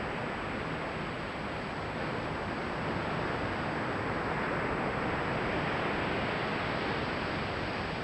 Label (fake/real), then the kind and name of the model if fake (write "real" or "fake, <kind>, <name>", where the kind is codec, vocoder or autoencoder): real